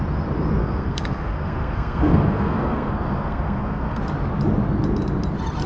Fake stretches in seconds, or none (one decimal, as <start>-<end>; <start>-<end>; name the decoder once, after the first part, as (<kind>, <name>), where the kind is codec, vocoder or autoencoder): 0.6-4.0 (codec, SNAC)